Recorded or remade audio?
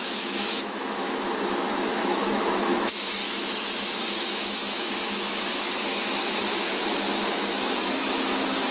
remade